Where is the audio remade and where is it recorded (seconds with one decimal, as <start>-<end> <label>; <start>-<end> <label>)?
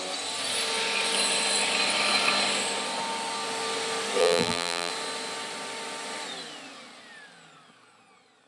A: 0.0-4.2 recorded; 4.2-4.9 remade; 4.9-8.5 recorded